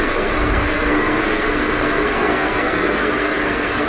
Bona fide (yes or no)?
no